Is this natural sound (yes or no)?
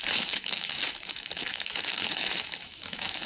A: no